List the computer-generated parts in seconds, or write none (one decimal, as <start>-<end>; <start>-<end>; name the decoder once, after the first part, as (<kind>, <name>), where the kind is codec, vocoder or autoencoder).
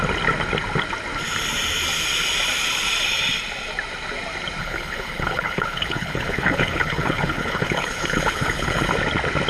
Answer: 4.6-8.8 (codec, HILCodec)